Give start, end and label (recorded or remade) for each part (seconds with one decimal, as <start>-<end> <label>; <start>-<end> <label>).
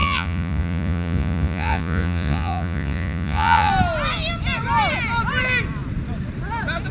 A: 0.0-3.7 remade; 3.7-6.9 recorded